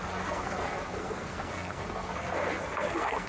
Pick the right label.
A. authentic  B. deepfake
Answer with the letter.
B